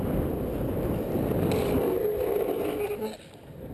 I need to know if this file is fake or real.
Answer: real